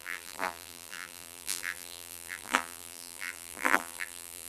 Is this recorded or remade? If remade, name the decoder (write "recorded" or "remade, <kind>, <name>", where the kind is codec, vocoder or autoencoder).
remade, vocoder, BigVGAN v2